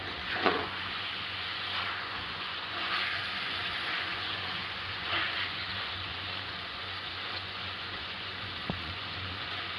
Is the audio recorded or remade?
remade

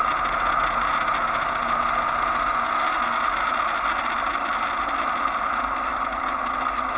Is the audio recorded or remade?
recorded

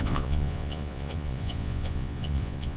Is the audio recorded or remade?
remade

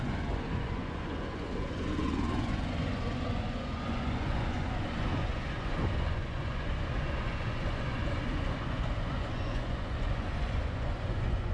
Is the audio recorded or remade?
remade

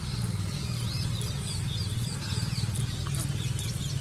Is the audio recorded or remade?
recorded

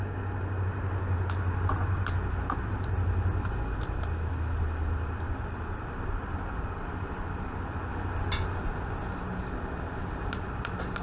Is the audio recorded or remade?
recorded